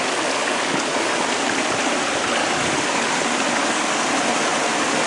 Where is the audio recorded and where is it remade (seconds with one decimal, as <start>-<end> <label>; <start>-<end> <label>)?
0.0-0.4 recorded; 0.4-1.1 remade; 1.1-2.4 recorded; 2.4-3.1 remade; 3.1-3.6 recorded; 3.6-4.1 remade; 4.1-5.1 recorded